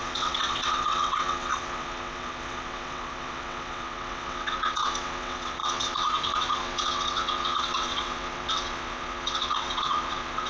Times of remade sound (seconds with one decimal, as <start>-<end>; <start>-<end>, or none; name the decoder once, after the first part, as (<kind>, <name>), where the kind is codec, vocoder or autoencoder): 0.0-10.5 (vocoder, WaveNeXt)